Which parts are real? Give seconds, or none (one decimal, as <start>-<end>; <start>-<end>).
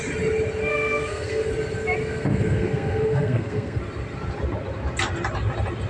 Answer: 0.0-0.6; 1.5-2.0; 3.8-5.9